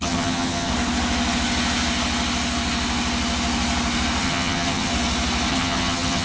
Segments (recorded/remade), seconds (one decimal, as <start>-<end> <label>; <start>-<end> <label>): 0.0-0.7 remade; 0.7-4.2 recorded; 4.2-4.9 remade; 4.9-5.5 recorded; 5.5-6.2 remade